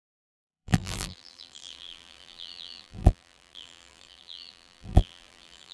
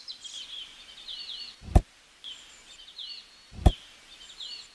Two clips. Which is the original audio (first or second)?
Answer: second